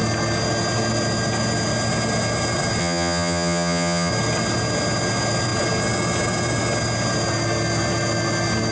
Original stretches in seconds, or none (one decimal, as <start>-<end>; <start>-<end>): 0.0-2.8; 4.1-8.7